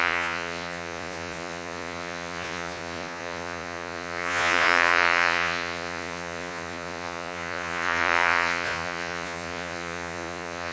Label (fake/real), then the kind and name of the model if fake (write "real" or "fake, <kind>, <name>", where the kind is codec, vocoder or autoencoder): fake, vocoder, Vocos